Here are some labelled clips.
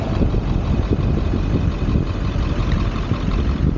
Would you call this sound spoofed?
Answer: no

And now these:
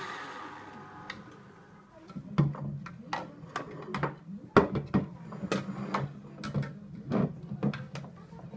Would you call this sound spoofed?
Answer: no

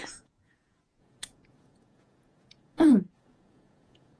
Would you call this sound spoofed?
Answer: yes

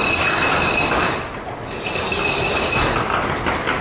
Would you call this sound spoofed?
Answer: no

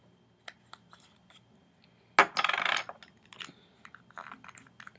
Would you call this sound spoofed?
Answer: no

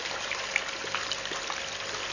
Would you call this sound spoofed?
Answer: no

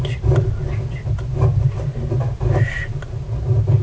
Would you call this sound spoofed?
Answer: no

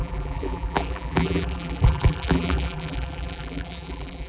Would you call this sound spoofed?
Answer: yes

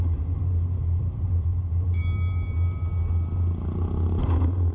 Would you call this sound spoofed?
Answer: no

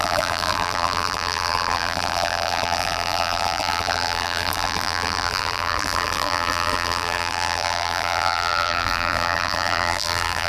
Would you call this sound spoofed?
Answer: yes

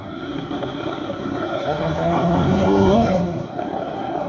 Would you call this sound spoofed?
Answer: yes